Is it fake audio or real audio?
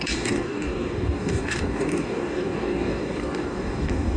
fake